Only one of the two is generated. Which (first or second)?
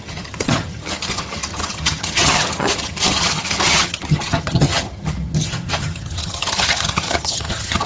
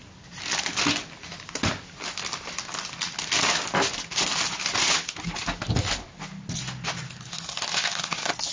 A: first